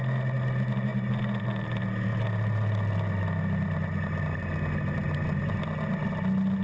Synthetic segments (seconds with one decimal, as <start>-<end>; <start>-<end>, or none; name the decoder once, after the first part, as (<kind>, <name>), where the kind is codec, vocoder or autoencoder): none